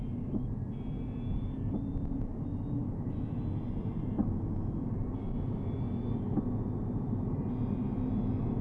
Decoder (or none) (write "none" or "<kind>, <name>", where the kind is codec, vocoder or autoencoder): none